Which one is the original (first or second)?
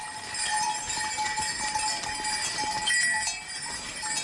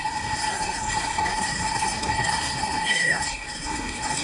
first